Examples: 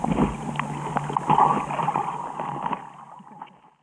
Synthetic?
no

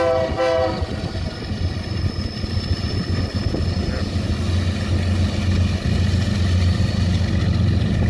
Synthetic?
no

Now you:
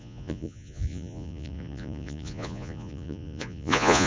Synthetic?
yes